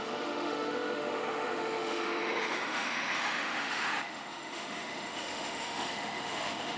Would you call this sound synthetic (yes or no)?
yes